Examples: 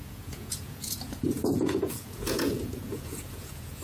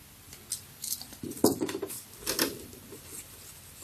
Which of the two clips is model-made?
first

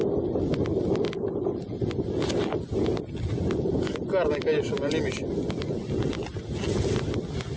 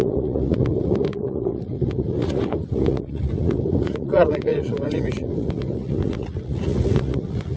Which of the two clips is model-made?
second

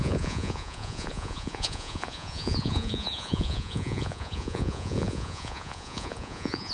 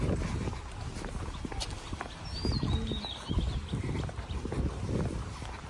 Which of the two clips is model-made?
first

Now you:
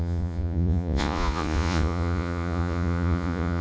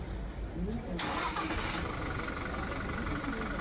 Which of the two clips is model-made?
first